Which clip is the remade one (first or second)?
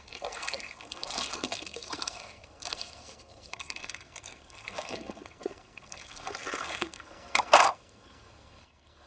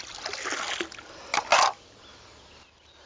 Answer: first